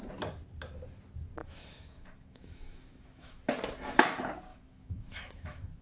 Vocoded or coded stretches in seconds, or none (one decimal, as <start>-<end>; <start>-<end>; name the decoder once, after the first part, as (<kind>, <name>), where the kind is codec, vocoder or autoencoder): 1.4-3.4 (autoencoder, DAC-VAE); 4.5-5.8